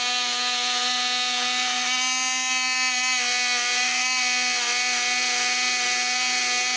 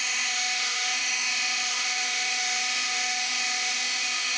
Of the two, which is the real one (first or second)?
first